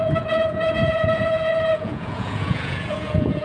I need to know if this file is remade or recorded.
remade